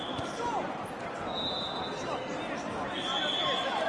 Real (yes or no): yes